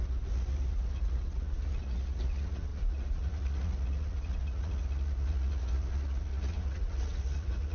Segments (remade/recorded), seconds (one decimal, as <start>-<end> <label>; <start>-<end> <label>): 0.0-7.7 remade